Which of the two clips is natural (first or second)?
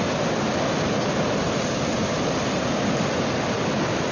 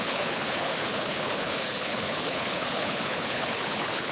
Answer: first